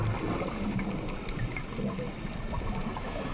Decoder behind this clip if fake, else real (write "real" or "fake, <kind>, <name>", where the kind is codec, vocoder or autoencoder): real